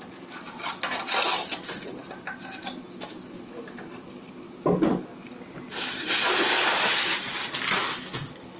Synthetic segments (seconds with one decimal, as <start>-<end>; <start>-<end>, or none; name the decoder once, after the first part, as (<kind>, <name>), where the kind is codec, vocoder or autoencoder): none